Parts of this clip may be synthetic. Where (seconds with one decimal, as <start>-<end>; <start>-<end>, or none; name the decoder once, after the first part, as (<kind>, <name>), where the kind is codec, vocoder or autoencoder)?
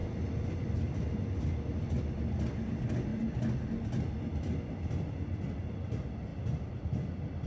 none